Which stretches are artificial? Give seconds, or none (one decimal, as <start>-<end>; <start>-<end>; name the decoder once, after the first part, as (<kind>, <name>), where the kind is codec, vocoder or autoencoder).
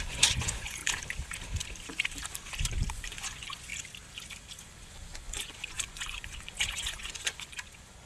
0.0-0.8 (vocoder, Vocos); 2.9-3.7; 4.6-8.1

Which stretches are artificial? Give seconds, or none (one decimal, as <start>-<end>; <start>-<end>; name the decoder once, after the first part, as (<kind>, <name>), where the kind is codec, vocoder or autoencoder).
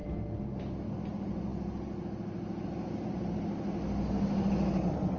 none